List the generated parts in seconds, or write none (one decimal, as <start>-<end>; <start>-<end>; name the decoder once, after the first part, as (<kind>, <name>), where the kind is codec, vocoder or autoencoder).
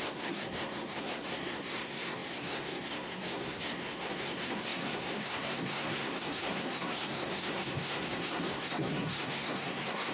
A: 0.0-10.1 (codec, SNAC)